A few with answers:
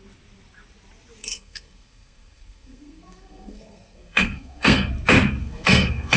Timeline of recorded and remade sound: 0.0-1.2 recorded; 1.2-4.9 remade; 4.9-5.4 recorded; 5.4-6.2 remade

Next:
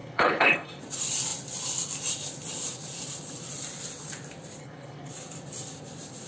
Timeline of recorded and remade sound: 0.0-0.8 remade; 0.8-4.6 recorded; 4.6-5.1 remade; 5.1-6.3 recorded

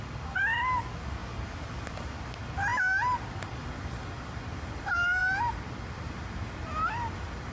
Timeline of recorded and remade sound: 0.0-7.5 recorded

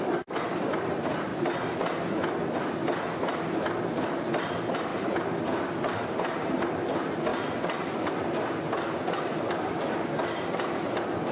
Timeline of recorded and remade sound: 0.0-11.3 recorded

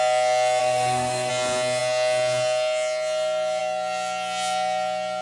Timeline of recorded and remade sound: 0.0-0.6 recorded; 0.6-1.3 remade; 1.3-5.2 recorded

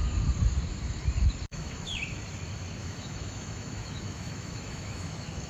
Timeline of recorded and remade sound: 0.0-1.5 recorded; 1.5-2.0 remade; 2.0-2.8 recorded; 2.8-5.5 remade